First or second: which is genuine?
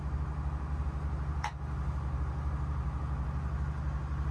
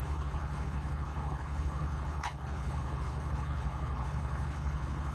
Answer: first